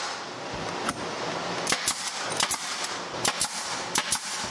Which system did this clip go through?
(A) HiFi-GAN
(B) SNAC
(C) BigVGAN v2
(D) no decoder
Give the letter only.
D